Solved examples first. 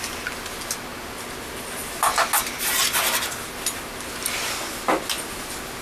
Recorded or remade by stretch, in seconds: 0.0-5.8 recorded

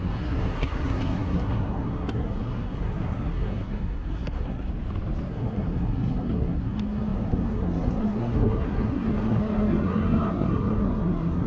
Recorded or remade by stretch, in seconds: 0.0-4.7 remade; 4.7-5.3 recorded; 5.3-11.5 remade

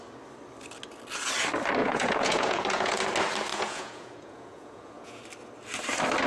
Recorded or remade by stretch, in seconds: 0.0-1.8 recorded; 1.8-3.0 remade; 3.0-3.5 recorded; 3.5-5.2 remade; 5.2-6.3 recorded

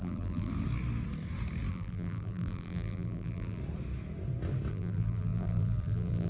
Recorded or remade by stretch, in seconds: 0.0-0.5 remade; 0.5-1.7 recorded; 1.7-3.6 remade; 3.6-4.7 recorded; 4.7-6.3 remade